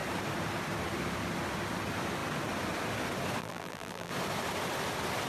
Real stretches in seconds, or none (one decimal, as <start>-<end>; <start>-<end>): 0.0-3.4; 4.1-5.3